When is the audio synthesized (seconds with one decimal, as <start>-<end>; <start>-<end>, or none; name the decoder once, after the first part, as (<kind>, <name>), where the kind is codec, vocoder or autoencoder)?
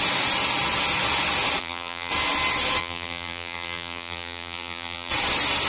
1.6-2.1 (vocoder, BigVGAN v2); 2.8-5.1